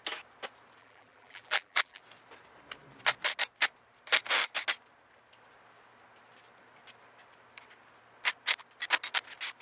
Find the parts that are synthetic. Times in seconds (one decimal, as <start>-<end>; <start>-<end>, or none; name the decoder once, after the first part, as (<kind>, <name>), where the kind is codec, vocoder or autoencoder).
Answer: 0.8-2.0 (vocoder, BigVGAN v2)